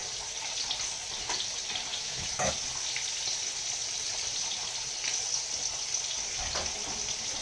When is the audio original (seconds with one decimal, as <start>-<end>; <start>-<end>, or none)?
0.0-1.9; 2.5-7.4